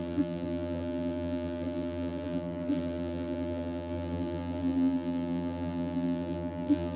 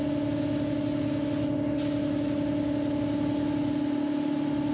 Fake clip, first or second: first